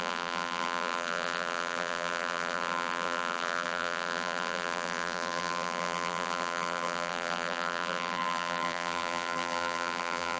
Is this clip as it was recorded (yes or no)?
no